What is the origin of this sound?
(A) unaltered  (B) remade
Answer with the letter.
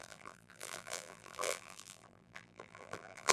B